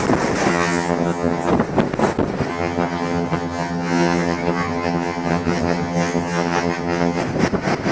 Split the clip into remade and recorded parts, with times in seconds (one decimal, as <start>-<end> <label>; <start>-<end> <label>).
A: 0.0-0.5 recorded; 0.5-1.5 remade; 1.5-2.5 recorded; 2.5-7.2 remade; 7.2-7.9 recorded